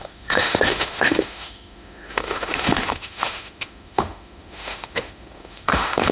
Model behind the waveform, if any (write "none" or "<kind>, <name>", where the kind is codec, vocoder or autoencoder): autoencoder, DAC-VAE